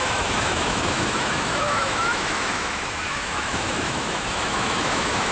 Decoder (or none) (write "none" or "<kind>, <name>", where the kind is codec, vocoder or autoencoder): autoencoder, DAC-VAE